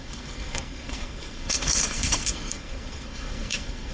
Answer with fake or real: fake